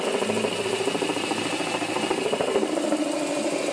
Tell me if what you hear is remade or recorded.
recorded